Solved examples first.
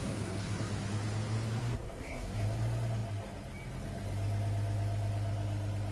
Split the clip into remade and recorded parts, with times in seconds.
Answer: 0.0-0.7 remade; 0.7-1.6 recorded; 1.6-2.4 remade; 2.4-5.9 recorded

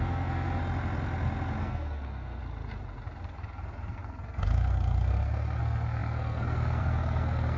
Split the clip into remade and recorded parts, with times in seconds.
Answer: 0.0-0.6 remade; 0.6-1.6 recorded; 1.6-2.4 remade; 2.4-3.2 recorded; 3.2-7.6 remade

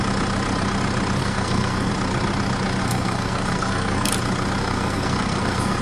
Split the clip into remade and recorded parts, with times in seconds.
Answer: 0.0-1.2 recorded; 1.2-1.9 remade; 1.9-2.8 recorded; 2.8-4.1 remade; 4.1-4.6 recorded; 4.6-5.8 remade

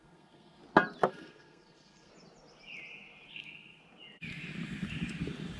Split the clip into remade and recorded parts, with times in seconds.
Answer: 0.0-0.6 remade; 0.6-1.1 recorded; 1.1-2.1 remade; 2.1-3.3 recorded; 3.3-3.8 remade; 3.8-5.6 recorded

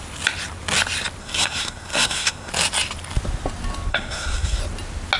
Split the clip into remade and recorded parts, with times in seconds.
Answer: 0.0-1.2 recorded; 1.2-2.5 remade; 2.5-3.9 recorded; 3.9-4.6 remade; 4.6-5.2 recorded

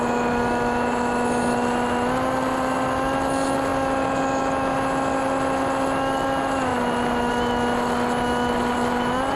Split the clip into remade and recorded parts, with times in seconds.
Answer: 0.0-9.4 recorded

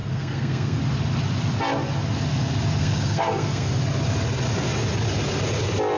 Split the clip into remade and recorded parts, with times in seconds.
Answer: 0.0-0.8 remade; 0.8-2.8 recorded; 2.8-3.8 remade; 3.8-6.0 recorded